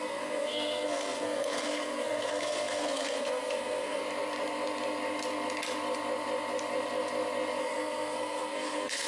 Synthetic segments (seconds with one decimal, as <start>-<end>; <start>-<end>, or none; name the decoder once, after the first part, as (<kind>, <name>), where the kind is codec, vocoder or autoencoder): 0.0-4.0 (codec, SNAC); 7.6-9.1